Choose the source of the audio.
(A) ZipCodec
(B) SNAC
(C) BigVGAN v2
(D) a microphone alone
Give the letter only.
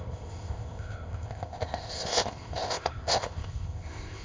A